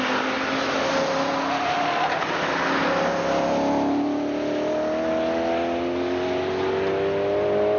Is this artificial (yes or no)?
no